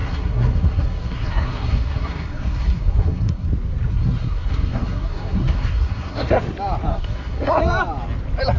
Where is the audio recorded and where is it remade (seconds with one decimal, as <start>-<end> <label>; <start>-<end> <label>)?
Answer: 0.0-3.5 remade; 3.5-3.9 recorded; 3.9-6.4 remade; 6.4-6.9 recorded; 6.9-7.6 remade; 7.6-8.6 recorded